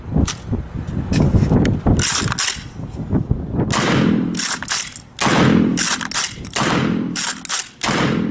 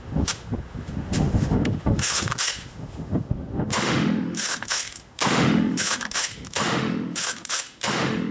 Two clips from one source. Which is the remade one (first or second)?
second